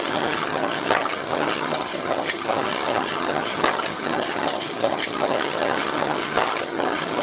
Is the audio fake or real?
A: fake